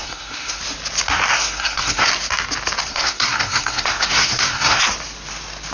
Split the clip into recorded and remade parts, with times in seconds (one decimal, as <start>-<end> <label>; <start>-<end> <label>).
0.0-0.6 remade; 0.6-1.3 recorded; 1.3-2.1 remade; 2.1-2.9 recorded; 2.9-4.8 remade; 4.8-5.7 recorded